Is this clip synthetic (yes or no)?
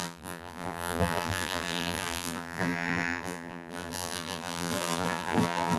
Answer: yes